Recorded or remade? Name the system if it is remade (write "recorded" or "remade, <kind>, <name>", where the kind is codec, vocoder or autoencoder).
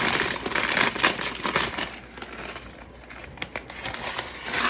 recorded